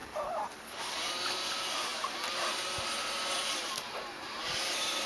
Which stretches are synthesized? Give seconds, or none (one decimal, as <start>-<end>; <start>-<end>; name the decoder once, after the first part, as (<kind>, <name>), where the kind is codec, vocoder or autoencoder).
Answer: 0.8-5.1 (vocoder, BigVGAN v2)